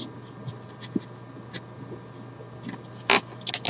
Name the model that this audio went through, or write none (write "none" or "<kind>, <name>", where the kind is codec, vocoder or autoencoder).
none